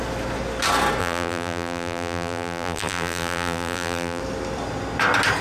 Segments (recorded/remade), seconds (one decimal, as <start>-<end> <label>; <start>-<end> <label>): 0.0-1.0 recorded; 1.0-4.2 remade; 4.2-5.4 recorded